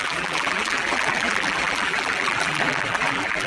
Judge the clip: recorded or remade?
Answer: remade